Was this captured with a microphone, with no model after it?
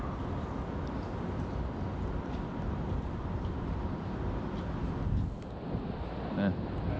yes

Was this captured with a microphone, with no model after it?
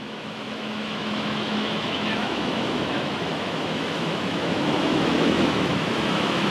no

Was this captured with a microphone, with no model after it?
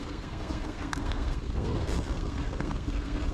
no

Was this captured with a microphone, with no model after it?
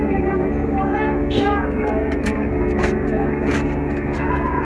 no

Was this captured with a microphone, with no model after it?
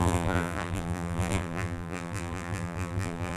no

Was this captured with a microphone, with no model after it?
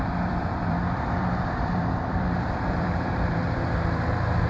no